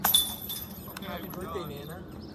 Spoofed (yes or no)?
yes